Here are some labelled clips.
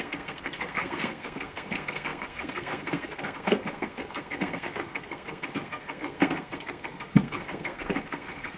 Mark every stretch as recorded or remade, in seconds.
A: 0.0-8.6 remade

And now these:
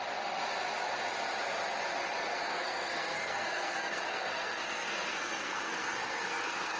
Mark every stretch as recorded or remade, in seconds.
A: 0.0-2.3 recorded; 2.3-6.8 remade